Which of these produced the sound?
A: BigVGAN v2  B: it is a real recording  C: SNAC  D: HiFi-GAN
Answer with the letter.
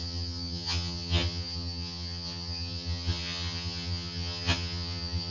D